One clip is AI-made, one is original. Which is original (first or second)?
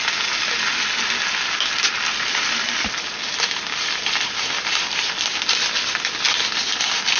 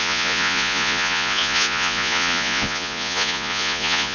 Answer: first